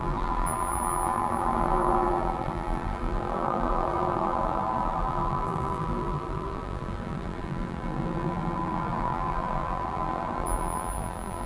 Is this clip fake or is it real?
fake